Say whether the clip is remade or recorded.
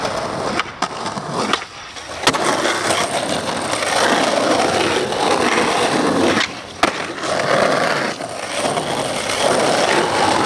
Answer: recorded